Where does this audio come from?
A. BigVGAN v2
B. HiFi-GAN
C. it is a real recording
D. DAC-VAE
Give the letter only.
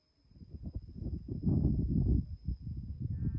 C